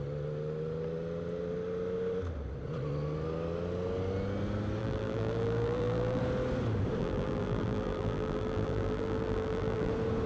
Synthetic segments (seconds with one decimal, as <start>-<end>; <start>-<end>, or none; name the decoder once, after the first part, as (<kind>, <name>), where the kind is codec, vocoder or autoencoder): 4.8-6.2 (vocoder, BigVGAN v2); 7.0-9.9